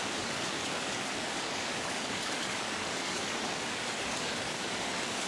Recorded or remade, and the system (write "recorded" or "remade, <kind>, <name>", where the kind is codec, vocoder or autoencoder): remade, codec, DAC